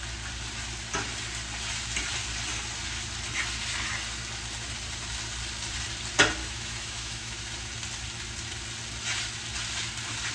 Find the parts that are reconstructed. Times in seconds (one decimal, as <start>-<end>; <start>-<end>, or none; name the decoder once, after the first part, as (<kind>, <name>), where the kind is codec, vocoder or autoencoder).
6.4-7.4 (autoencoder, DAC-VAE)

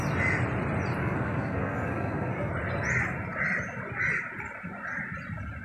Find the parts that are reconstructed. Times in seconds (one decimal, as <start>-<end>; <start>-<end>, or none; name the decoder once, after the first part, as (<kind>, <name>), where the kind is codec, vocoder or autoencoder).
1.0-2.5 (codec, SNAC)

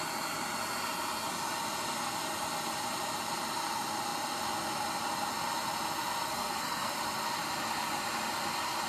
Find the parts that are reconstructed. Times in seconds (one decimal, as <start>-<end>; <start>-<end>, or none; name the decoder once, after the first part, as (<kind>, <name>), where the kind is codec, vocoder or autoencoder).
6.3-6.9 (codec, SNAC)

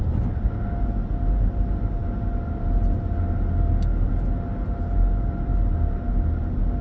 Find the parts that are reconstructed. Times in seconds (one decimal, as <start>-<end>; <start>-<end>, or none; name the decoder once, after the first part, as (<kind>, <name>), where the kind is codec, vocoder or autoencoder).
none

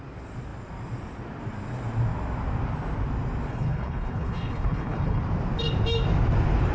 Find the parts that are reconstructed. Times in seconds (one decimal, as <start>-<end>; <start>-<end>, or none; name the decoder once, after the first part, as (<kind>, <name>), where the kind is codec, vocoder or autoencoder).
3.5-5.2 (codec, HILCodec)

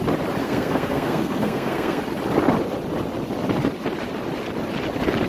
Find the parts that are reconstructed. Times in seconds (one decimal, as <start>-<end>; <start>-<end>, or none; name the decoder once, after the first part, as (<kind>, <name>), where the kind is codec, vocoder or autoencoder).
0.4-2.0 (codec, SNAC)